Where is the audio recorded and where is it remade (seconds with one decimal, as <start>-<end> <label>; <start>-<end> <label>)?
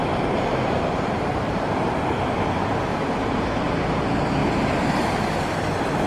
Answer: 0.0-1.7 remade; 1.7-2.9 recorded; 2.9-3.7 remade; 3.7-6.1 recorded